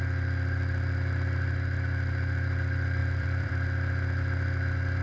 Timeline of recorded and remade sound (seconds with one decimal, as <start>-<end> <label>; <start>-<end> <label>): 0.0-3.0 recorded; 3.0-3.5 remade; 3.5-5.0 recorded